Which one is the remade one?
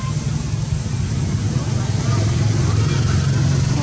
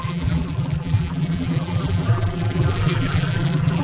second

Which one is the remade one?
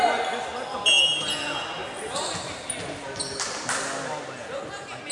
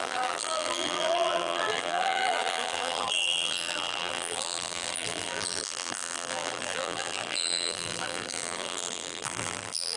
second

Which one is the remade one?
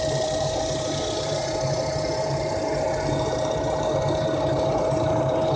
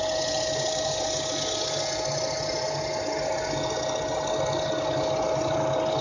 first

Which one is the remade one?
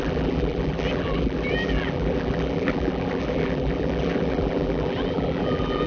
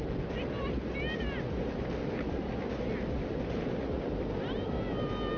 first